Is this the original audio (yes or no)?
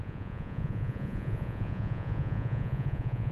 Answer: no